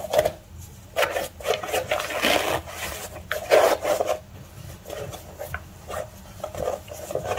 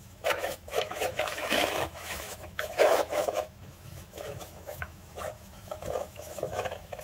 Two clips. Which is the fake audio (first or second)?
second